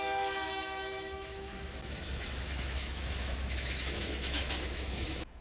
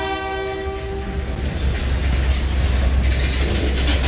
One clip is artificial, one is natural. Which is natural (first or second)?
second